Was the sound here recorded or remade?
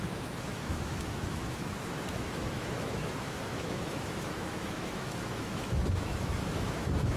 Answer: remade